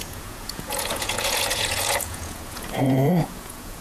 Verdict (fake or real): fake